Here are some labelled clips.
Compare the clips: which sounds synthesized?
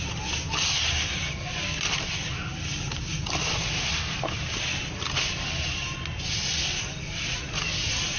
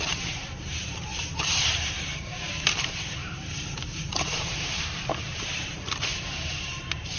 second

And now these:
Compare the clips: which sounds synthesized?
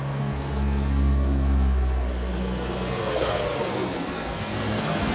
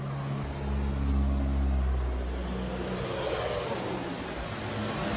first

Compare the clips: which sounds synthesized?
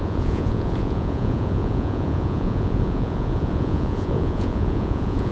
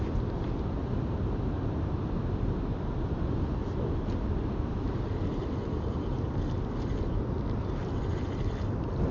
first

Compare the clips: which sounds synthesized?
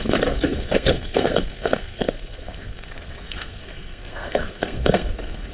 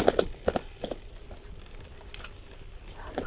first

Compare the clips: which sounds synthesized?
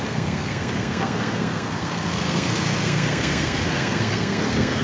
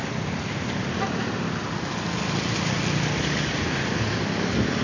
first